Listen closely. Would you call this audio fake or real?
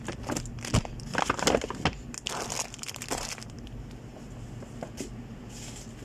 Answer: real